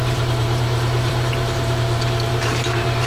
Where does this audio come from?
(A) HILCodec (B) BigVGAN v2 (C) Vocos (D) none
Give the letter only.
B